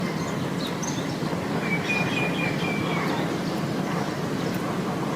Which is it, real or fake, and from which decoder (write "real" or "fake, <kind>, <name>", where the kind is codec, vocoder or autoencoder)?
real